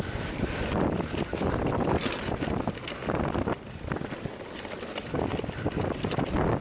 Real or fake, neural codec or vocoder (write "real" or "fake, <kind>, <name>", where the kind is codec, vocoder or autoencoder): real